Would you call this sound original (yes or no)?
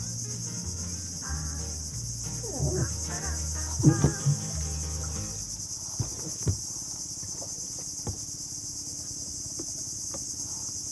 yes